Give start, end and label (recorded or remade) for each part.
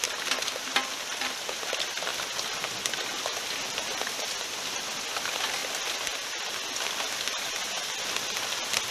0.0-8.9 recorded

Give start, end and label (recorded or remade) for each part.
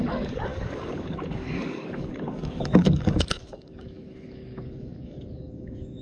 0.0-6.0 remade